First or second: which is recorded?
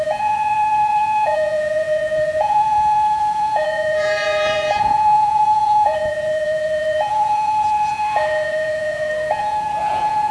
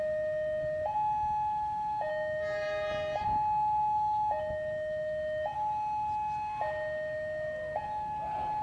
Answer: second